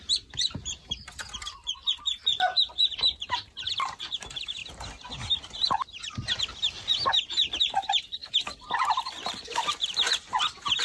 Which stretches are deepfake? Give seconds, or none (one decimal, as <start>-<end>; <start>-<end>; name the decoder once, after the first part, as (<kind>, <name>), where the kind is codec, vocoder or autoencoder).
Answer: 0.0-4.6 (vocoder, BigVGAN v2); 7.6-8.2; 9.8-10.8